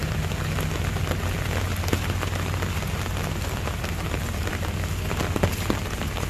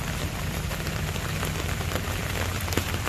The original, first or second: first